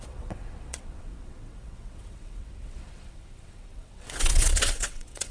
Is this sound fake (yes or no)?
yes